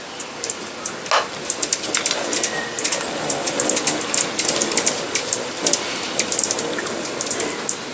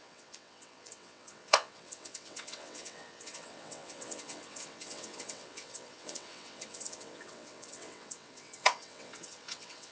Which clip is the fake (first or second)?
second